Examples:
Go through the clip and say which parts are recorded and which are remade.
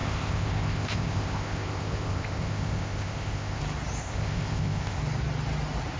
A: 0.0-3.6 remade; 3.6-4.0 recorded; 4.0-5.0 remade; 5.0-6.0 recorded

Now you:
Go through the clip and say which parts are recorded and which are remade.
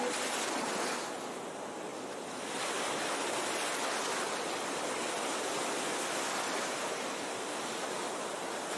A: 0.0-8.8 recorded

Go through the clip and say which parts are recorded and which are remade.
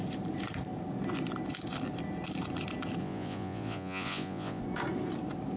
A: 0.0-3.0 recorded; 3.0-4.6 remade; 4.6-5.6 recorded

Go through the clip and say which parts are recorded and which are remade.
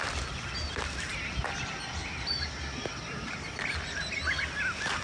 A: 0.0-5.0 recorded